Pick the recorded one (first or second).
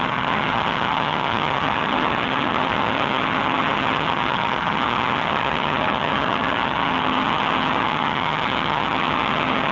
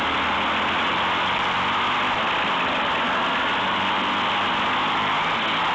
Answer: second